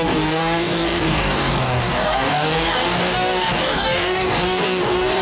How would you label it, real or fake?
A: fake